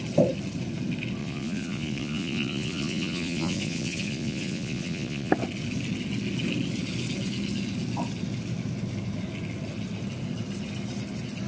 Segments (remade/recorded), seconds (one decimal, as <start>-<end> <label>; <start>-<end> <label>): 0.0-1.2 recorded; 1.2-5.3 remade; 5.3-11.5 recorded